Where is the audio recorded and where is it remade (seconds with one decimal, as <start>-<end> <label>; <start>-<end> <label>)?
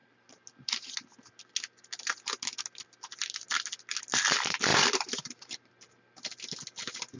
0.0-4.7 recorded; 4.7-5.7 remade; 5.7-7.2 recorded